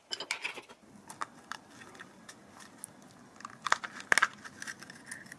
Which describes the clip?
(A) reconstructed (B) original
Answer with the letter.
B